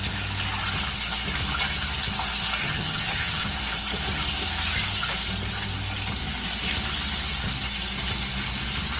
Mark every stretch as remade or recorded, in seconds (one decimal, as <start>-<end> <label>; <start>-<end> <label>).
0.0-2.6 recorded; 2.6-3.5 remade; 3.5-9.0 recorded